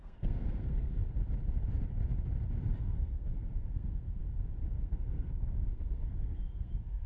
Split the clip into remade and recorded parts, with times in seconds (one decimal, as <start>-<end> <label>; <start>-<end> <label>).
0.0-1.0 remade; 1.0-2.8 recorded; 2.8-4.2 remade; 4.2-4.8 recorded; 4.8-7.1 remade